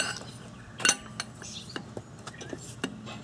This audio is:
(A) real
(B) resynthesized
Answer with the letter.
A